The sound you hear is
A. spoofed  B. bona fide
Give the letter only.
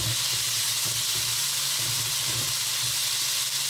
B